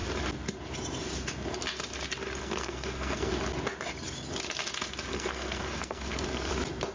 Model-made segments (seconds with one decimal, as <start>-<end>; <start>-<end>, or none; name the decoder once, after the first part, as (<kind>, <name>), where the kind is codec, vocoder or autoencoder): 2.4-3.3 (codec, SNAC); 5.1-6.5